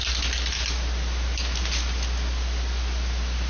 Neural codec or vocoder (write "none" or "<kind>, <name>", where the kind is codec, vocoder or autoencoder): none